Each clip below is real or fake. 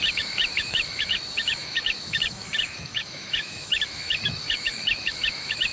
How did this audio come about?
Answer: fake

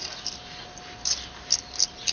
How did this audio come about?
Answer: real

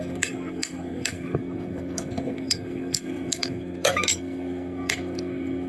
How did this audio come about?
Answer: fake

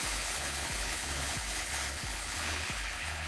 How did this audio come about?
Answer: fake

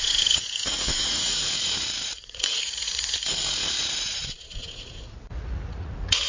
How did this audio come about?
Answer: fake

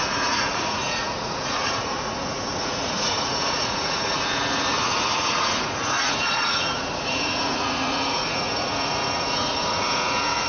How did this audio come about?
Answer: fake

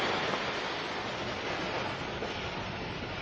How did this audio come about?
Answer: real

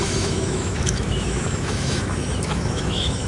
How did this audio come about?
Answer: fake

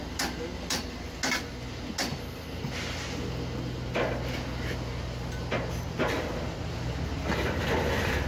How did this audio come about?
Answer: real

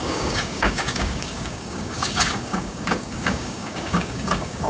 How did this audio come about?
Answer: fake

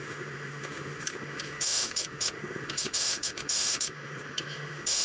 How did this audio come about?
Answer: fake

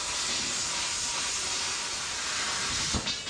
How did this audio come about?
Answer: real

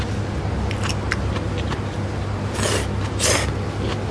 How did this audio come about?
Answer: real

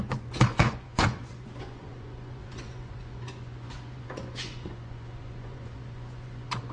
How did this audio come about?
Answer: fake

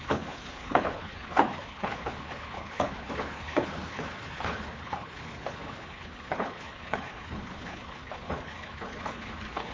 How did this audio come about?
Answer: fake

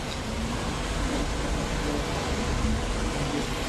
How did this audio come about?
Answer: real